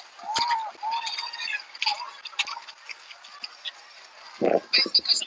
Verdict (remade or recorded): recorded